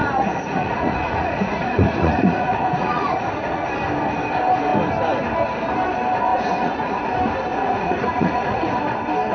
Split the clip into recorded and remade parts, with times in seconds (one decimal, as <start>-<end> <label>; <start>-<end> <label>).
0.0-3.7 remade; 3.7-6.3 recorded; 6.3-7.0 remade; 7.0-7.5 recorded; 7.5-8.8 remade; 8.8-9.3 recorded

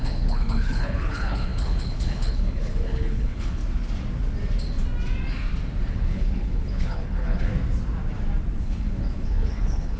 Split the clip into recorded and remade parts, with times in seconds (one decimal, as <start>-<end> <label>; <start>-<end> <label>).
0.0-3.6 remade; 3.6-5.9 recorded; 5.9-7.5 remade; 7.5-8.6 recorded; 8.6-10.0 remade

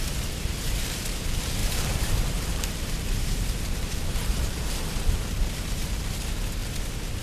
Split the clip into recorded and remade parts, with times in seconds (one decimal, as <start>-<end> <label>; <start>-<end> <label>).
0.0-6.6 remade; 6.6-7.2 recorded

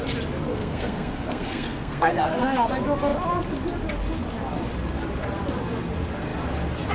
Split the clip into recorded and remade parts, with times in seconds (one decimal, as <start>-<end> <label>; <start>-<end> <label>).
0.0-0.5 recorded; 0.5-2.7 remade; 2.7-6.9 recorded

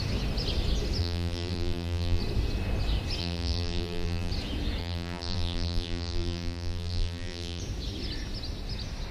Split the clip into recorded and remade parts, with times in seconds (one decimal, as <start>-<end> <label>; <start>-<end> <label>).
0.0-1.0 recorded; 1.0-2.2 remade; 2.2-3.2 recorded; 3.2-4.3 remade; 4.3-4.8 recorded; 4.8-7.6 remade; 7.6-9.1 recorded

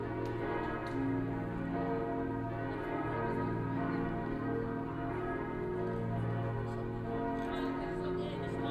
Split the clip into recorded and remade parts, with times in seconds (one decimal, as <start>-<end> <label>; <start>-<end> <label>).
0.0-8.7 recorded